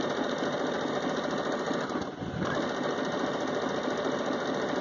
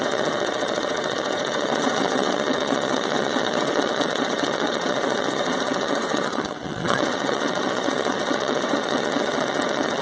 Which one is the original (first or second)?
first